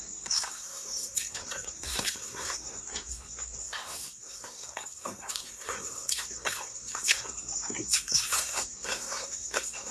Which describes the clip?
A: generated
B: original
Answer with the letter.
A